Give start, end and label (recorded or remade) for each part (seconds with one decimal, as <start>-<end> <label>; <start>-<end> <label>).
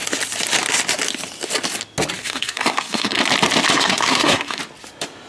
0.0-2.2 recorded; 2.2-3.2 remade; 3.2-3.7 recorded; 3.7-4.6 remade; 4.6-5.3 recorded